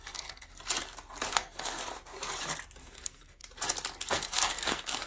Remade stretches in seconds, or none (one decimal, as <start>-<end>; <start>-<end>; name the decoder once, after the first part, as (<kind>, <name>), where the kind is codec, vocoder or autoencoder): 0.0-0.5 (codec, SNAC); 1.3-1.8; 2.8-3.4; 4.1-5.1